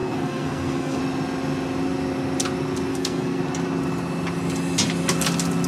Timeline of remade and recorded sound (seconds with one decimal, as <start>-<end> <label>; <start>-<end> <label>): 0.0-1.0 remade; 1.0-2.9 recorded; 2.9-3.4 remade; 3.4-5.7 recorded